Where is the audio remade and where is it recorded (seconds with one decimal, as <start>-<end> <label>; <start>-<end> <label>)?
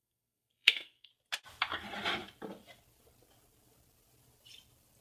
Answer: 0.0-1.1 remade; 1.1-5.0 recorded